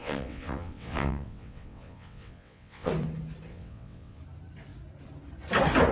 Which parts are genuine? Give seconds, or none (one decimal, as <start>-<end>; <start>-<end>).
2.9-3.5; 4.2-5.9

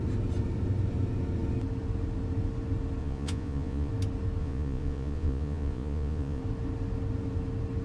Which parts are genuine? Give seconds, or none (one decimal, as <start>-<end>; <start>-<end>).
0.0-3.0; 3.9-4.4; 6.4-7.8

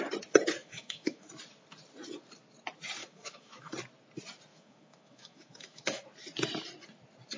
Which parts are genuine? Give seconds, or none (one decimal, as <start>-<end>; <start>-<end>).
0.0-0.6; 1.3-3.0; 3.7-4.5; 6.0-7.4

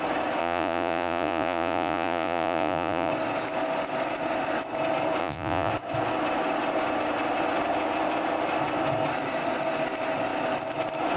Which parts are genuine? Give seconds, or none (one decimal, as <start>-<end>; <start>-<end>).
0.0-0.4; 3.1-5.2; 5.7-11.2